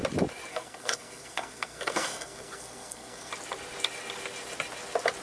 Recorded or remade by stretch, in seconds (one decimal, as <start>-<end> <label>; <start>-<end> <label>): 0.0-0.5 recorded; 0.5-3.3 remade; 3.3-5.2 recorded